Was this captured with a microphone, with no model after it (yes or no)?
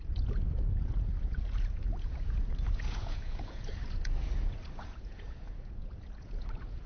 no